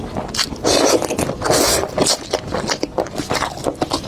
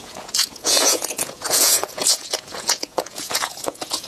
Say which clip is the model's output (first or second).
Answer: second